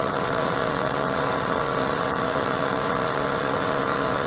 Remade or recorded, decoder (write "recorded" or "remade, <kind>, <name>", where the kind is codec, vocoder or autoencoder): remade, vocoder, WaveNeXt